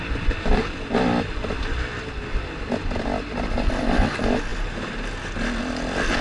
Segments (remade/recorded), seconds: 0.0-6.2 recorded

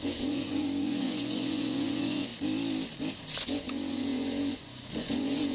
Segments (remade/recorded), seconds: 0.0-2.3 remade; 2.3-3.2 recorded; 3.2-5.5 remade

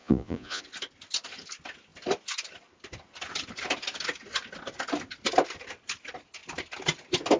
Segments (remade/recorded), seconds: 0.0-0.6 remade; 0.6-7.4 recorded

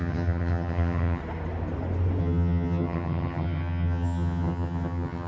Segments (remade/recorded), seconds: 0.0-1.2 remade; 1.2-2.2 recorded; 2.2-5.3 remade

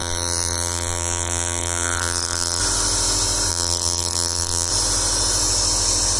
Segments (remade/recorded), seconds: 0.0-2.6 remade; 2.6-3.5 recorded; 3.5-4.7 remade; 4.7-6.2 recorded

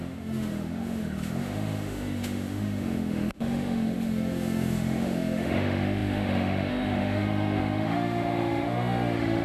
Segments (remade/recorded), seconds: 0.0-9.4 remade

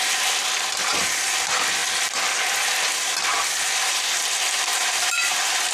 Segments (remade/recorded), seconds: 0.0-4.7 recorded; 4.7-5.7 remade

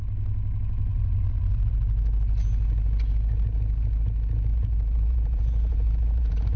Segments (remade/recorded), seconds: 0.0-0.9 recorded; 0.9-1.7 remade; 1.7-4.5 recorded; 4.5-6.6 remade